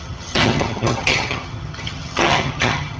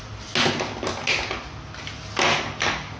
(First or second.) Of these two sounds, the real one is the second